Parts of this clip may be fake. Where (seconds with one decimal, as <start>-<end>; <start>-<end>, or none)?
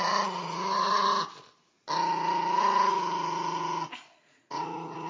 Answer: 0.0-1.1; 4.2-5.1